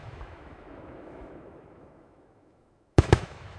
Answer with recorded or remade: remade